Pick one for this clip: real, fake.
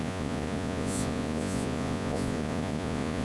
fake